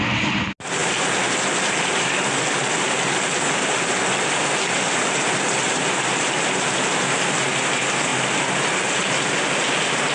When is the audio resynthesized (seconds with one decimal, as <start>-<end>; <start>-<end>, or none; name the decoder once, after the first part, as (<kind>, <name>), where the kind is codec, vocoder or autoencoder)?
none

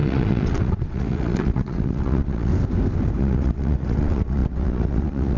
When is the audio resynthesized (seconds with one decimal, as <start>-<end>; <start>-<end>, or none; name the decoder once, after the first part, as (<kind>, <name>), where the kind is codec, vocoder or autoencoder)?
0.0-2.5 (vocoder, WaveNeXt); 3.2-5.4